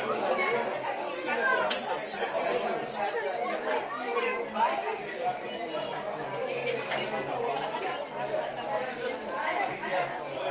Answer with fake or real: real